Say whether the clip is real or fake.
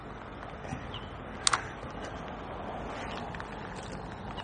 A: real